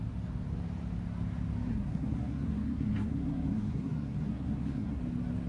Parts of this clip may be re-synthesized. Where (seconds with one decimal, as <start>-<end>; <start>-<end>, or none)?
1.7-5.0